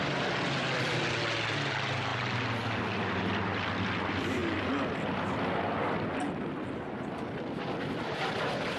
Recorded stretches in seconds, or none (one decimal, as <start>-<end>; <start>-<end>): 0.0-8.8